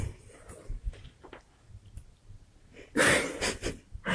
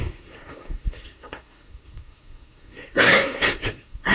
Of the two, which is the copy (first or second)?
second